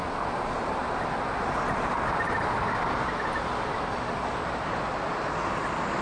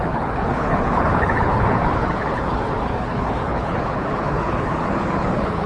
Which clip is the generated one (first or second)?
second